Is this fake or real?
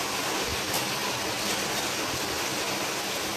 real